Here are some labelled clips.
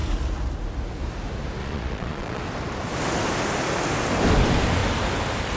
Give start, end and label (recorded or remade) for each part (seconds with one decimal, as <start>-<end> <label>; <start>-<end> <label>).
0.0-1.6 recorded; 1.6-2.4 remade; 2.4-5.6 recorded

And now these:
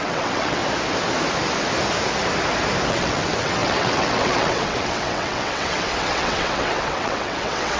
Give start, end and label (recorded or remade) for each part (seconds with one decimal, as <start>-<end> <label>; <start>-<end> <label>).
0.0-0.6 remade; 0.6-2.9 recorded; 2.9-7.8 remade

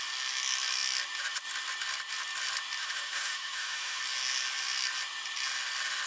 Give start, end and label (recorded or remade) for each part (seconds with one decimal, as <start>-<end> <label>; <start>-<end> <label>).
0.0-2.8 recorded; 2.8-4.0 remade; 4.0-6.1 recorded

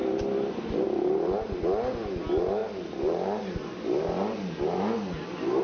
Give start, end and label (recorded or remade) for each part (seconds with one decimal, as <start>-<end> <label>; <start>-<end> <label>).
0.0-5.6 recorded

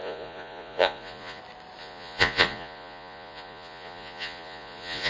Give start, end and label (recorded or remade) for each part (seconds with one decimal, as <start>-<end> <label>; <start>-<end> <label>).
0.0-1.4 remade; 1.4-1.8 recorded; 1.8-5.1 remade

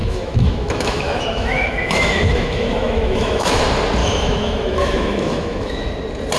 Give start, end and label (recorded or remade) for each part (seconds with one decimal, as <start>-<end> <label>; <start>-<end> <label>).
0.0-3.6 remade; 3.6-4.0 recorded; 4.0-5.9 remade; 5.9-6.4 recorded